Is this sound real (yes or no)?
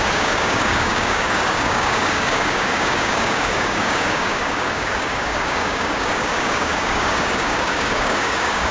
no